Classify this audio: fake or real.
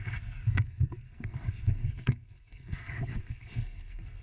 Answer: fake